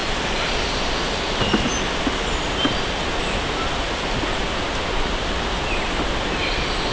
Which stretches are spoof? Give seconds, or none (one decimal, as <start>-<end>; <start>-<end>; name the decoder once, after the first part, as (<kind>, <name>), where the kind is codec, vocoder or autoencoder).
none